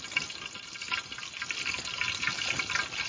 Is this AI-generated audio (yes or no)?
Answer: no